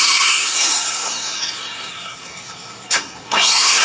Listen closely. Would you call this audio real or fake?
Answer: fake